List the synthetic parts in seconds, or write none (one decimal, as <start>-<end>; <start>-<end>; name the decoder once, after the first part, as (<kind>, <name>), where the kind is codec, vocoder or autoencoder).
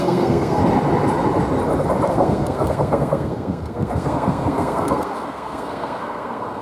0.0-0.6 (codec, SNAC); 2.1-6.6